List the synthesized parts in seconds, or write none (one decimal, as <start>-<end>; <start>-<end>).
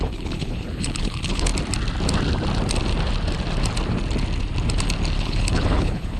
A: 0.0-1.5; 5.2-6.2